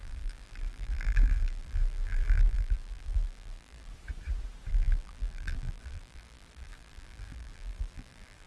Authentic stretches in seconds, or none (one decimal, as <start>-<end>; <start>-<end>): 3.9-4.7